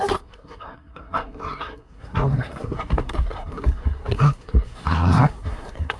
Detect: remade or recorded remade